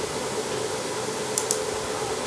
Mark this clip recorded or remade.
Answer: recorded